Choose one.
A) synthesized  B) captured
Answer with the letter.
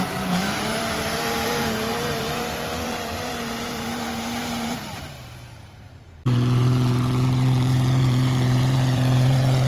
A